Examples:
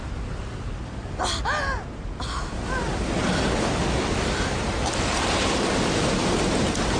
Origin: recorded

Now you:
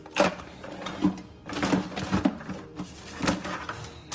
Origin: recorded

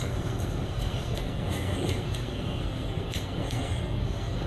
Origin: remade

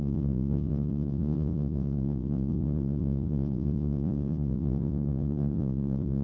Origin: remade